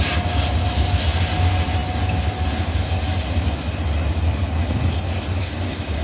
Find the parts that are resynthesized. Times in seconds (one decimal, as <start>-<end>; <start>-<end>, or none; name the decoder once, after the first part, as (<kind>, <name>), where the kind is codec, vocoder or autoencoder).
none